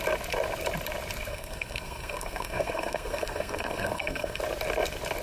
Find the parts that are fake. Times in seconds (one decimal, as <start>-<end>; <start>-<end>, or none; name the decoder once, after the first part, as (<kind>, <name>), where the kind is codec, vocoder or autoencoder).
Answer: 1.3-4.4 (codec, SNAC)